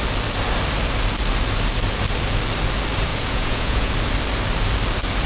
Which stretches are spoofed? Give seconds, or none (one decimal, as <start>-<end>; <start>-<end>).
3.1-3.9